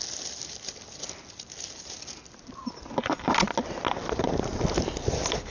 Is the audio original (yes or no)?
yes